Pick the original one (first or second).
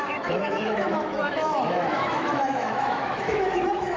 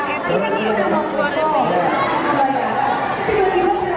second